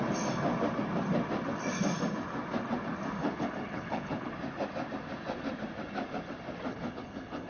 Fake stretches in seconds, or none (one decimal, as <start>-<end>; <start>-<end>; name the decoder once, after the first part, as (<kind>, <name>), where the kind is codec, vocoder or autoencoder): 3.2-4.3 (codec, HILCodec); 6.7-7.5